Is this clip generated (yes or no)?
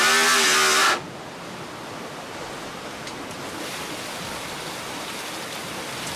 no